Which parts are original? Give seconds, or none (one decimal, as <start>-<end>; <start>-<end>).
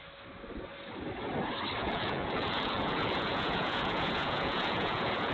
0.0-1.8